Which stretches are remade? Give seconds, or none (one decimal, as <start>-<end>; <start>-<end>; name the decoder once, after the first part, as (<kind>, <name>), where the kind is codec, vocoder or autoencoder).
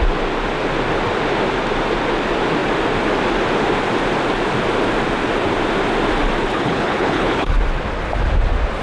6.5-7.6 (codec, HILCodec)